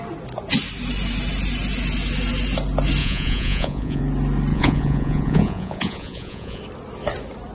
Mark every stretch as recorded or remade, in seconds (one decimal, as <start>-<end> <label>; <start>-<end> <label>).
0.0-3.0 recorded; 3.0-4.0 remade; 4.0-4.5 recorded; 4.5-6.6 remade; 6.6-7.5 recorded